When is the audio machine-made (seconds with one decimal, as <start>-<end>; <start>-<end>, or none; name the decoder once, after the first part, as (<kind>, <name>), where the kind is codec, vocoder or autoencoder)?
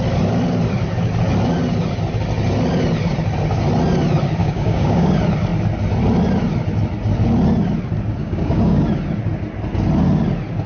4.4-5.1 (codec, DAC); 8.2-8.8